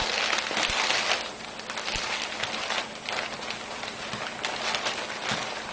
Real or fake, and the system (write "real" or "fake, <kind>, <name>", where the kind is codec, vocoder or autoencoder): real